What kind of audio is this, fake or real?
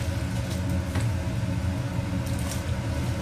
real